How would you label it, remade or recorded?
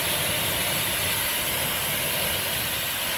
recorded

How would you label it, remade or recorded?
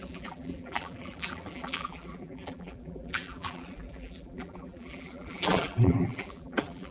remade